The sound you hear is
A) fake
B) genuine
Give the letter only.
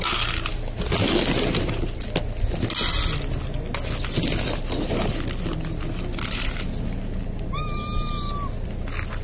B